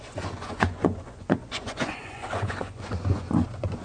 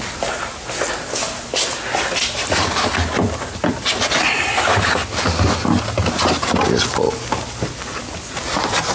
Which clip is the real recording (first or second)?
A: second